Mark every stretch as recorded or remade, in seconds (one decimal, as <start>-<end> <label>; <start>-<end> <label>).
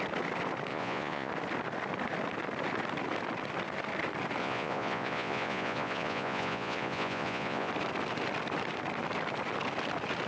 0.0-0.7 recorded; 0.7-1.3 remade; 1.3-4.4 recorded; 4.4-7.7 remade; 7.7-10.3 recorded